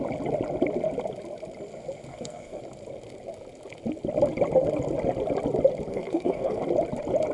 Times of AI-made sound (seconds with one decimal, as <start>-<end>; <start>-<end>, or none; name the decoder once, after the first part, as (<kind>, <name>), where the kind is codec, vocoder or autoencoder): 2.1-2.6 (codec, SNAC); 5.9-6.6